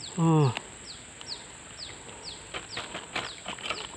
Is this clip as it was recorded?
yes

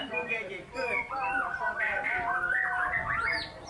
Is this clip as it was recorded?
yes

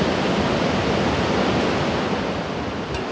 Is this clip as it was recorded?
yes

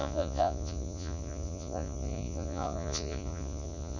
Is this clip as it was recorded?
no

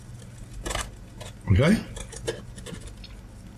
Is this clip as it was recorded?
yes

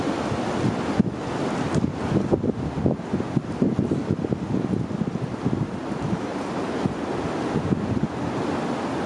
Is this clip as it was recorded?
yes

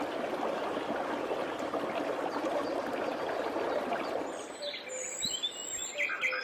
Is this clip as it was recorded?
yes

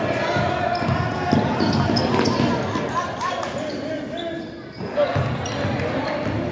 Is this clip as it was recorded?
yes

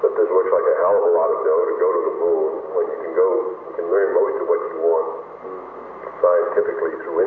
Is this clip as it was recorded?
yes